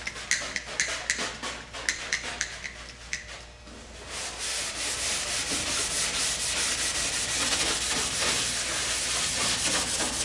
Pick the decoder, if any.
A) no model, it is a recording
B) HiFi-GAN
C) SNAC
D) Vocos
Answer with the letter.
A